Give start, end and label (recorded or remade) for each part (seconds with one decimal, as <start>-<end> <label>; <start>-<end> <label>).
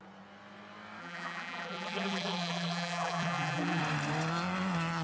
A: 0.0-1.0 recorded; 1.0-3.8 remade; 3.8-5.0 recorded